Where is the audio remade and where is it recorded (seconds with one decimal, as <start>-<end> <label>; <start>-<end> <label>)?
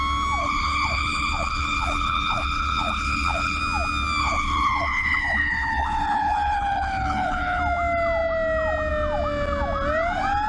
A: 0.0-0.4 recorded; 0.4-3.6 remade; 3.6-4.2 recorded; 4.2-7.6 remade; 7.6-10.5 recorded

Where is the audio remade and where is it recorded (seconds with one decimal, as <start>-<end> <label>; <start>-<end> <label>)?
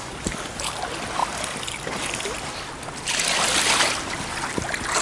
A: 0.0-5.0 recorded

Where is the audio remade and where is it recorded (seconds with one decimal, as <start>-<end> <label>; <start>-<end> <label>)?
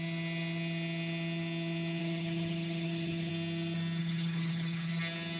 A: 0.0-2.0 recorded; 2.0-3.3 remade; 3.3-4.0 recorded; 4.0-4.9 remade; 4.9-5.4 recorded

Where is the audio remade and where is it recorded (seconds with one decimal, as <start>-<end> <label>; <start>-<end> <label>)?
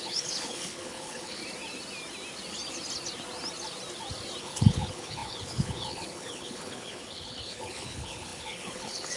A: 0.0-1.4 remade; 1.4-4.4 recorded; 4.4-9.2 remade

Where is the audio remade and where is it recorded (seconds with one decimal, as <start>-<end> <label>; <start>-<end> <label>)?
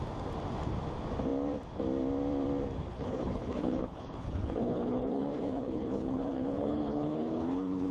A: 0.0-2.9 recorded; 2.9-7.9 remade